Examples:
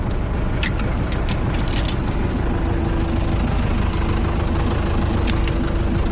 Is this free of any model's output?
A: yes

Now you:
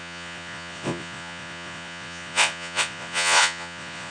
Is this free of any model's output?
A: no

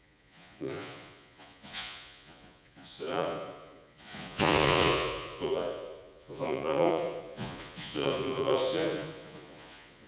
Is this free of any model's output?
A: no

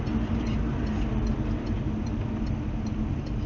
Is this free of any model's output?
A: yes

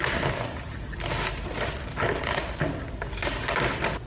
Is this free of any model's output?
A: yes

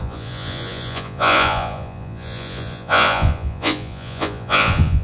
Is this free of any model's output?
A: no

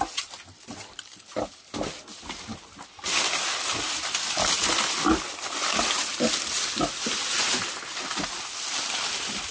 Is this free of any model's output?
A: yes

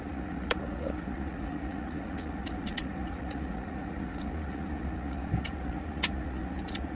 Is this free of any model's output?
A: no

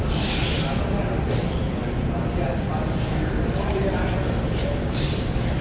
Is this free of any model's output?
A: yes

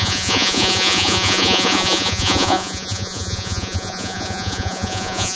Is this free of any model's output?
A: no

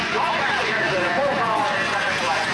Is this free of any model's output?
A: no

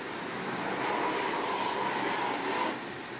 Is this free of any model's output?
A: yes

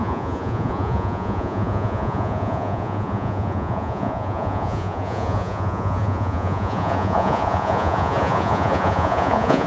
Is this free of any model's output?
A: no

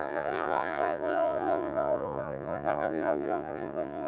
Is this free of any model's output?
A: no